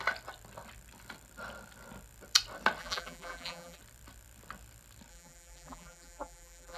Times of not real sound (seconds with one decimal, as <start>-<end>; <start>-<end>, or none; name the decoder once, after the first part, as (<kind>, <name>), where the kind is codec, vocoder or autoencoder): 2.8-3.8 (vocoder, BigVGAN v2); 5.1-6.8

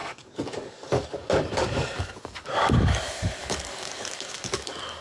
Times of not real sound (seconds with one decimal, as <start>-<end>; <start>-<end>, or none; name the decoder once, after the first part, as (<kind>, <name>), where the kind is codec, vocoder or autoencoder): 0.0-5.0 (codec, DAC)

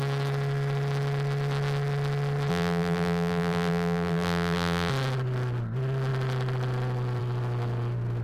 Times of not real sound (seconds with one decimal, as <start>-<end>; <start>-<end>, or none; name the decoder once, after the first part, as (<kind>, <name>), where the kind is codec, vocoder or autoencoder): 2.5-4.9 (vocoder, BigVGAN v2)

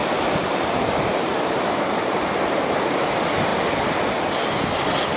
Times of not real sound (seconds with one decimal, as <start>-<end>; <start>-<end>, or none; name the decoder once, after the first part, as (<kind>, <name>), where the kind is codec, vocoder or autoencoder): 0.0-3.1 (vocoder, BigVGAN v2)